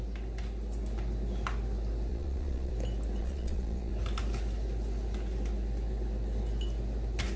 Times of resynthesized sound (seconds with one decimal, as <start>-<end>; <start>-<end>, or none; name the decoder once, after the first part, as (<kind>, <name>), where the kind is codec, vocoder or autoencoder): 2.1-2.7 (vocoder, Vocos); 3.2-3.9